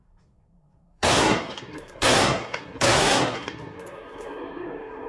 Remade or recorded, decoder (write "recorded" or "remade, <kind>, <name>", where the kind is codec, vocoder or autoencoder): remade, codec, SNAC